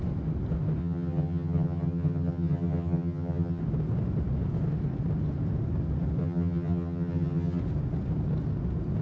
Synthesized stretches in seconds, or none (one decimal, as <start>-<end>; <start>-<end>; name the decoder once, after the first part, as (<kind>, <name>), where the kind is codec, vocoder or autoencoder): 0.8-3.6 (vocoder, HiFi-GAN); 6.2-7.6